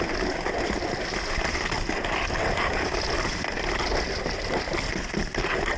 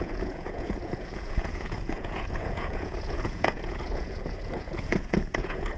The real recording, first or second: first